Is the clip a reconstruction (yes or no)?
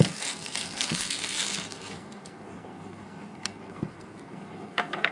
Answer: yes